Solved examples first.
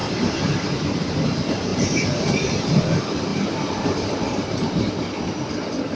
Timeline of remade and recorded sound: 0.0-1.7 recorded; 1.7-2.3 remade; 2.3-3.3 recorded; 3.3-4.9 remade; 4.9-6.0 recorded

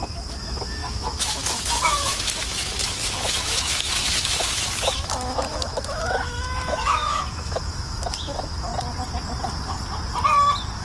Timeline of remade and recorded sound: 0.0-8.7 remade; 8.7-10.8 recorded

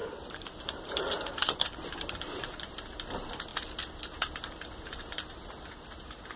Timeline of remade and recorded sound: 0.0-3.5 remade; 3.5-4.0 recorded; 4.0-6.4 remade

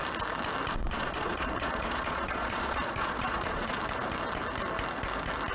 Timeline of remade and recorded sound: 0.0-0.8 recorded; 0.8-3.8 remade; 3.8-5.5 recorded

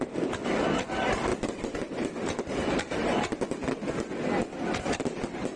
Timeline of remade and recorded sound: 0.0-1.3 recorded; 1.3-3.9 remade; 3.9-5.6 recorded